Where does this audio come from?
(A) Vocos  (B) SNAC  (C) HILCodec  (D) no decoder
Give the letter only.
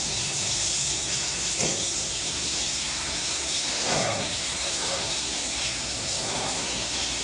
B